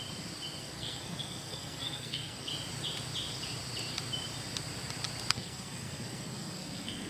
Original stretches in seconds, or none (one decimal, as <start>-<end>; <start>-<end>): 0.0-0.6; 2.5-5.3